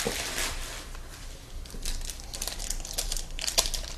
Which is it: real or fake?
real